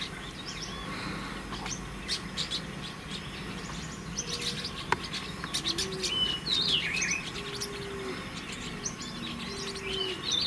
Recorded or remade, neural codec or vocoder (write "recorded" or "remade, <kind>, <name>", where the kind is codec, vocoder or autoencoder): recorded